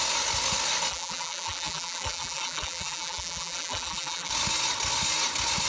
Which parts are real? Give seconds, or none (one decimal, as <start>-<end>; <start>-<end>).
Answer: 0.0-0.9; 4.3-5.7